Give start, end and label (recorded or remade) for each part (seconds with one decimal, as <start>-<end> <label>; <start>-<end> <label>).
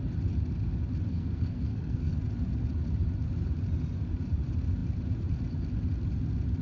0.0-1.1 recorded; 1.1-2.2 remade; 2.2-6.6 recorded